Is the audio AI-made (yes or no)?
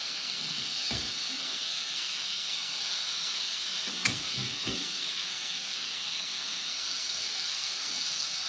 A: yes